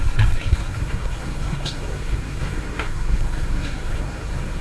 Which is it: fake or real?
fake